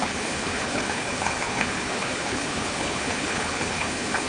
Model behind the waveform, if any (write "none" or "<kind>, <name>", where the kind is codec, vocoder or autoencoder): codec, HILCodec